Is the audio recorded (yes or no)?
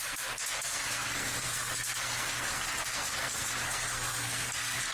no